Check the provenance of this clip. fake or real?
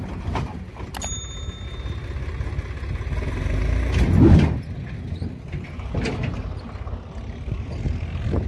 real